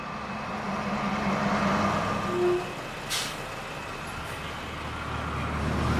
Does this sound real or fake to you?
real